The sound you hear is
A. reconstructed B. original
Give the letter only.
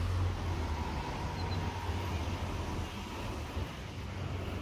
B